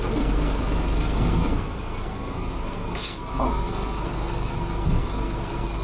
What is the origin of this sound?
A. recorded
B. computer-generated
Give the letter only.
B